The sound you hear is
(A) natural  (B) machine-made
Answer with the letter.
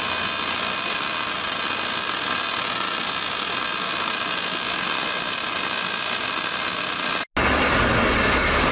A